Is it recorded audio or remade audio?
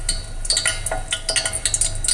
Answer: recorded